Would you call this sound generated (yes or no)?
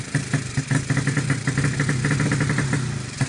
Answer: no